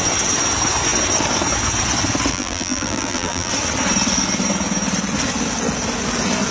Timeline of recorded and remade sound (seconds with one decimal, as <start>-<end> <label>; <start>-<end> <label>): 0.0-2.3 recorded; 2.3-3.5 remade; 3.5-6.5 recorded